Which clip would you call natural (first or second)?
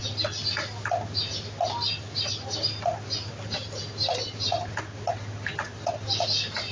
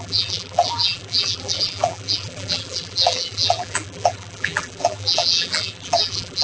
first